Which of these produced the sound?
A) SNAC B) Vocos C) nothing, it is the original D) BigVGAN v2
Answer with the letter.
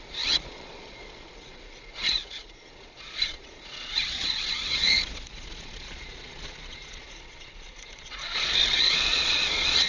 B